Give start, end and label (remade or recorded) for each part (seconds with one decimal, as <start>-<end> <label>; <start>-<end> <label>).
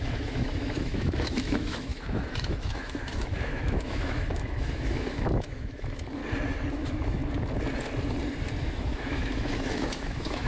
0.0-6.2 remade; 6.2-6.7 recorded; 6.7-7.2 remade; 7.2-8.6 recorded; 8.6-10.5 remade